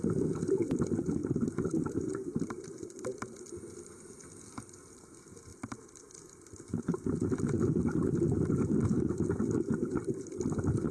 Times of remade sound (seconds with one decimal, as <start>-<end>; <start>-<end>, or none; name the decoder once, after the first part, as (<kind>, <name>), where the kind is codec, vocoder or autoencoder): none